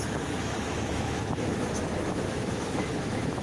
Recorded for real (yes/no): no